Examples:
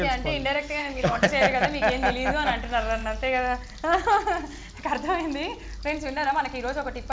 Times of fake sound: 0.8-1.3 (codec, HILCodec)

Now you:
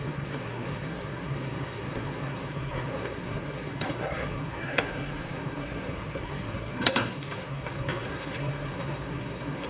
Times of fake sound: 0.0-9.7 (codec, SNAC)

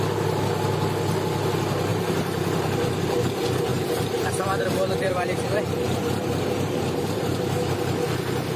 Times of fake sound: 1.9-3.2 (vocoder, BigVGAN v2); 3.7-7.4

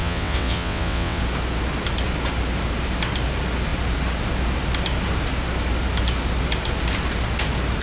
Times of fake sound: 0.0-1.2 (vocoder, WaveNeXt)

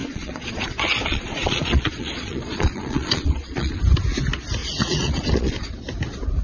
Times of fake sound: 0.0-3.8 (vocoder, Vocos); 4.6-5.8

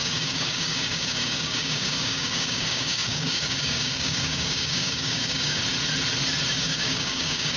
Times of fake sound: 0.0-5.6 (codec, DAC); 6.5-7.6

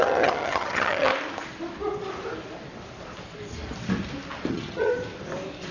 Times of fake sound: 0.0-1.1 (vocoder, HiFi-GAN); 4.5-4.9